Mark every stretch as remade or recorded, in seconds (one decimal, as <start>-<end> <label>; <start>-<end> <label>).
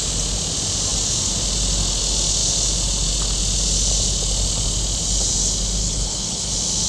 0.0-5.8 recorded; 5.8-6.5 remade; 6.5-6.9 recorded